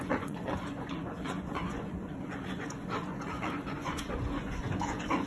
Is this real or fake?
fake